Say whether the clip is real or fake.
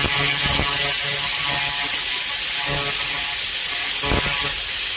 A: real